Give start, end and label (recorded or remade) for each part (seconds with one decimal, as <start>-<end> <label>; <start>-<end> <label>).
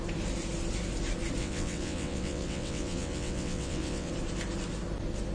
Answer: 0.0-1.4 recorded; 1.4-4.1 remade; 4.1-5.3 recorded